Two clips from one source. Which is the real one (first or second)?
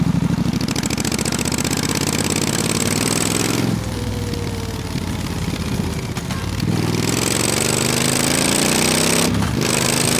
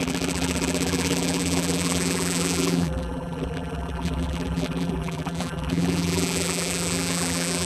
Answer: first